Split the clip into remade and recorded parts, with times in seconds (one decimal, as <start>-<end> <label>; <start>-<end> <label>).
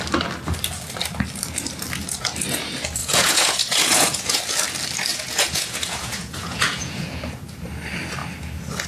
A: 0.0-3.0 recorded; 3.0-4.4 remade; 4.4-5.1 recorded; 5.1-7.2 remade; 7.2-8.9 recorded